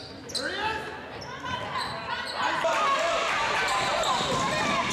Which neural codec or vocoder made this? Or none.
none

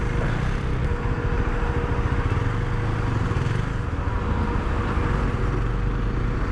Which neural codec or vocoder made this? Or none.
none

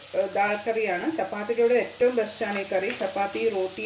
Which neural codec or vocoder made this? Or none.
none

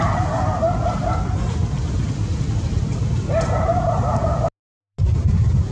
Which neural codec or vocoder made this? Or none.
none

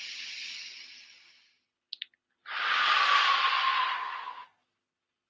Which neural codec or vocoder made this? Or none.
none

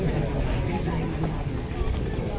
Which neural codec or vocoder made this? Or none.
none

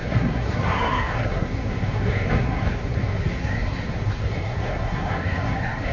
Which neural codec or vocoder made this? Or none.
codec, SNAC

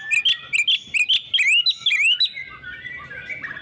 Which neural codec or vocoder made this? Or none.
none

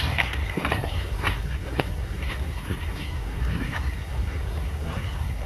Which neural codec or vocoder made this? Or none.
codec, SNAC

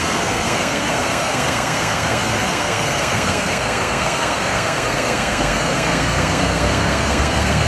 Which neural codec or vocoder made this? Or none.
codec, SNAC